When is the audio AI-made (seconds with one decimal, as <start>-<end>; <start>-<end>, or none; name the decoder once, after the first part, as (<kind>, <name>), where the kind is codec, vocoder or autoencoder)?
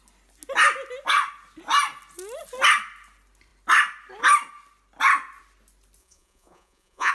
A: 6.0-7.1 (vocoder, Vocos)